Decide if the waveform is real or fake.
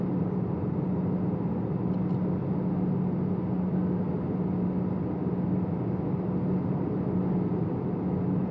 real